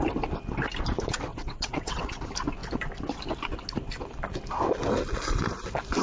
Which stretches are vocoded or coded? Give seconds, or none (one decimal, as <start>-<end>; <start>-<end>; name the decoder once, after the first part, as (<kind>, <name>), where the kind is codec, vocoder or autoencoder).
1.3-2.1 (vocoder, WaveNeXt)